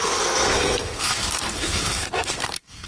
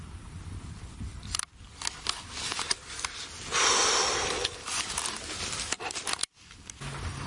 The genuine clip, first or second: second